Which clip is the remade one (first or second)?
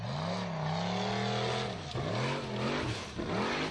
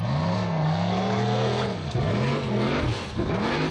second